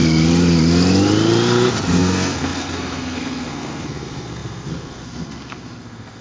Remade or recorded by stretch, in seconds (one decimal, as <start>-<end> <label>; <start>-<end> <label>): 0.0-2.0 recorded; 2.0-6.2 remade